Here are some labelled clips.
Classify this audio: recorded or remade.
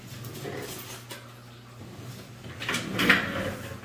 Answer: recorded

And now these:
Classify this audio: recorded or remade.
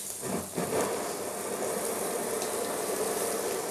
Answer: remade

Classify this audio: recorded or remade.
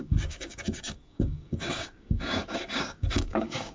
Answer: remade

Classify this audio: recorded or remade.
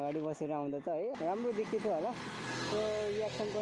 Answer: recorded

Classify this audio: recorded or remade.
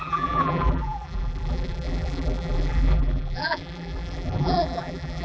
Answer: remade